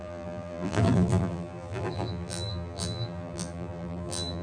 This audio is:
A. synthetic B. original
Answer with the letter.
A